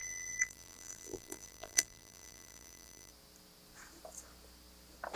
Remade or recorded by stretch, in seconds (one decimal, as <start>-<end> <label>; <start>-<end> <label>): 0.0-3.1 remade; 3.1-5.2 recorded